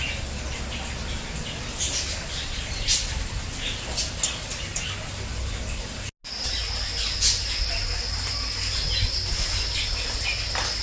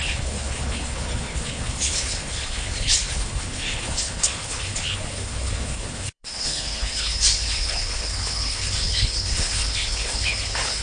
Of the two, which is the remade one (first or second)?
second